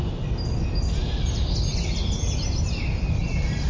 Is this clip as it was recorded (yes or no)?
yes